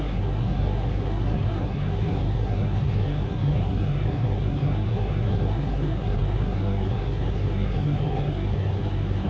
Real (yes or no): no